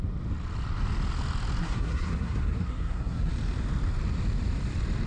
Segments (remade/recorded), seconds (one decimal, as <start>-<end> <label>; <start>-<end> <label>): 0.0-1.6 recorded; 1.6-3.3 remade; 3.3-5.1 recorded